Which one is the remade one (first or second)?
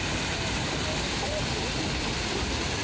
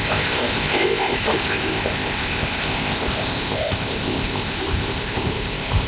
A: second